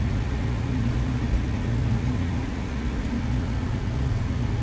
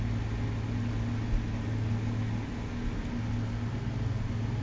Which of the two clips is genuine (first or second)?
second